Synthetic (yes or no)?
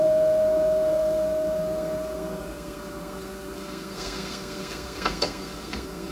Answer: yes